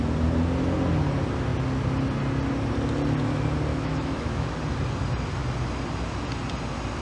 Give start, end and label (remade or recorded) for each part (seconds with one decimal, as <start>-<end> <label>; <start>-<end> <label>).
0.0-3.7 recorded; 3.7-4.6 remade; 4.6-7.0 recorded